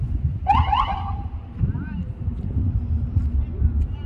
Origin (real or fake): real